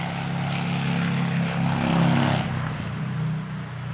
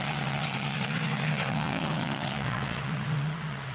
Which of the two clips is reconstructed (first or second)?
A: second